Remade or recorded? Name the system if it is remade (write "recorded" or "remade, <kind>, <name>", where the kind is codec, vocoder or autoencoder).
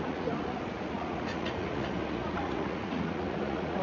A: remade, vocoder, Vocos